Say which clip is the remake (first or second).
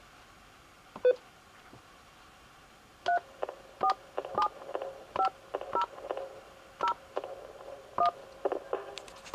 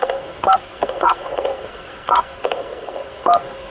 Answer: second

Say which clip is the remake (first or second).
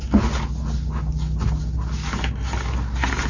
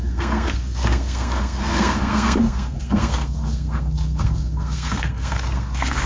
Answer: second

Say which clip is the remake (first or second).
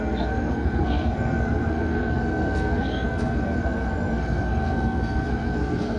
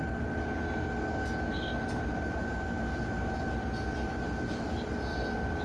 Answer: first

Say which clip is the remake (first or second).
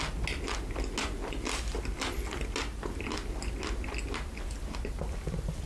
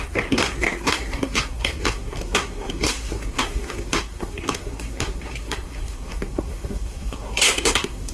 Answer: second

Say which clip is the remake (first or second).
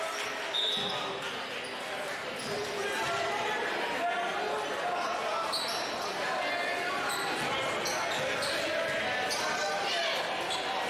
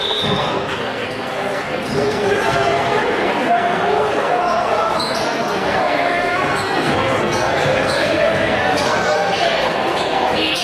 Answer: second